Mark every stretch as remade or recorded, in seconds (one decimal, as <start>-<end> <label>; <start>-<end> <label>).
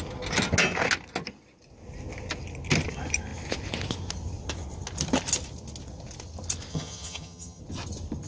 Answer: 0.0-6.7 recorded; 6.7-7.6 remade; 7.6-8.3 recorded